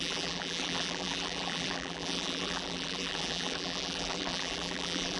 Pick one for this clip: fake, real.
fake